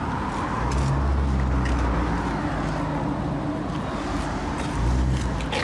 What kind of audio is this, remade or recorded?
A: recorded